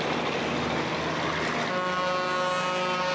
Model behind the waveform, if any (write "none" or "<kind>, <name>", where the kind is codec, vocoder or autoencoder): none